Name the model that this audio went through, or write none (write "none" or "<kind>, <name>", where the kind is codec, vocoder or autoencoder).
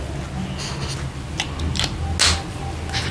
none